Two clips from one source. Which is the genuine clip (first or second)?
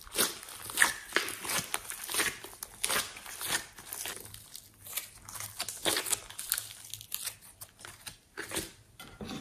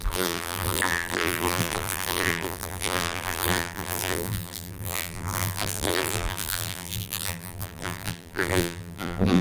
first